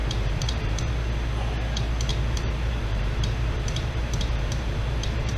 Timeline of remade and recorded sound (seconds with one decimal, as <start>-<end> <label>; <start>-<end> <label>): 0.0-0.9 remade; 0.9-2.1 recorded; 2.1-5.4 remade